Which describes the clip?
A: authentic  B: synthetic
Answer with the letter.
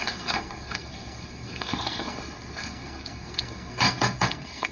B